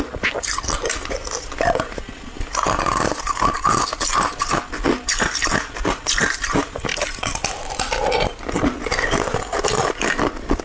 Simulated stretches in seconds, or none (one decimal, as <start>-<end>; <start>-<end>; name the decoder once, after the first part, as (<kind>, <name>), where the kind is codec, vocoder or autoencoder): none